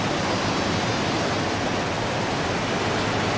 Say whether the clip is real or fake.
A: real